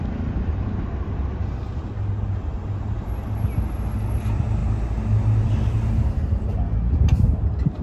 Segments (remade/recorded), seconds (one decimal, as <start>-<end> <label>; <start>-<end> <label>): 0.0-7.8 recorded